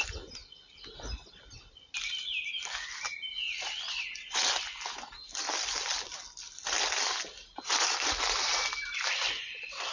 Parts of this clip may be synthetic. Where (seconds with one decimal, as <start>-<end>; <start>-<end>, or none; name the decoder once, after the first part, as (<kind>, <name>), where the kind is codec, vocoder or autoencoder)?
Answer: none